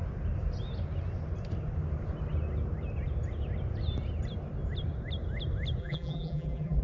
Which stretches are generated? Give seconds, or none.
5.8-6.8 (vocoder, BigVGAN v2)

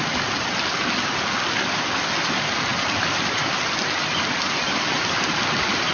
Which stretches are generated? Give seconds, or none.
2.7-5.9 (vocoder, BigVGAN v2)

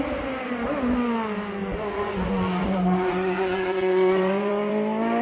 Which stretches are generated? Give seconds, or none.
1.6-4.7 (vocoder, Vocos)